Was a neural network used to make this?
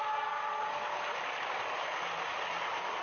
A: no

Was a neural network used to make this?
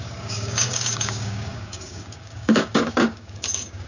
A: yes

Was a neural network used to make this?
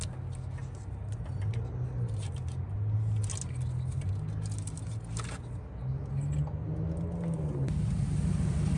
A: no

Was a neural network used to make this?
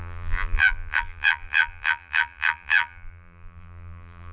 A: yes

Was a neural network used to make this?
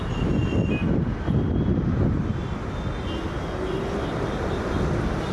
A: no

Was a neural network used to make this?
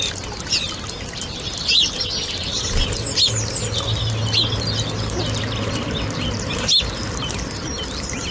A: no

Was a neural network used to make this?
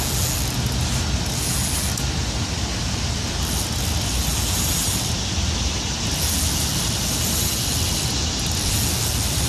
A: no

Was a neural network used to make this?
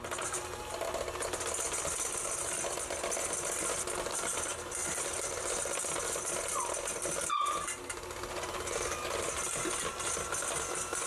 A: no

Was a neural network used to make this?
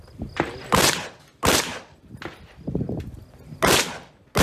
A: no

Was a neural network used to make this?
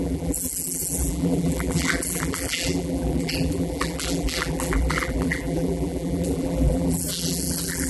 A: yes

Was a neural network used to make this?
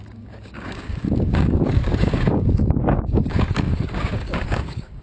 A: yes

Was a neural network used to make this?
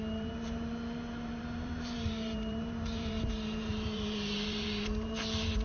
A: yes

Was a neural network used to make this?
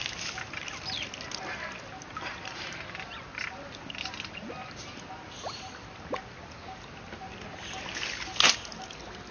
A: no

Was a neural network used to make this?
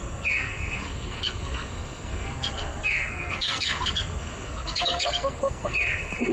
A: yes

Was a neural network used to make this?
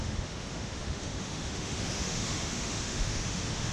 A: yes